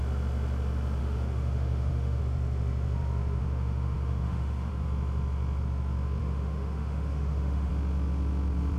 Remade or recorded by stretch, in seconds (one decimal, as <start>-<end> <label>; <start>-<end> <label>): 0.0-1.0 recorded; 1.0-2.2 remade; 2.2-3.4 recorded; 3.4-4.7 remade; 4.7-6.2 recorded; 6.2-7.7 remade; 7.7-8.8 recorded